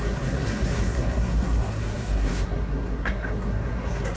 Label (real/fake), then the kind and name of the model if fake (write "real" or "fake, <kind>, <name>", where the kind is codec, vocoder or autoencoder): fake, codec, SNAC